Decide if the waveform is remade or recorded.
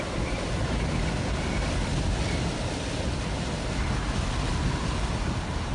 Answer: recorded